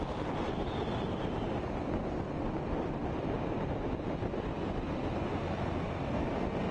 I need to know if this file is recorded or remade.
recorded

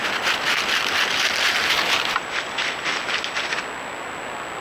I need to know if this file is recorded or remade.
recorded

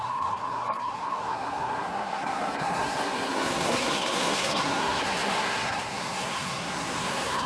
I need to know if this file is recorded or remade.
remade